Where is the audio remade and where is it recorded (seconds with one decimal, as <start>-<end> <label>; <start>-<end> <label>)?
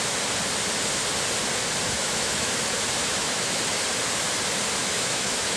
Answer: 0.0-2.0 recorded; 2.0-2.5 remade; 2.5-3.0 recorded; 3.0-3.6 remade; 3.6-4.8 recorded; 4.8-5.6 remade